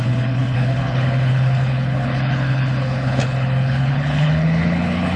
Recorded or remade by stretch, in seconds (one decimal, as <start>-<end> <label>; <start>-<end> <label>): 0.0-5.2 remade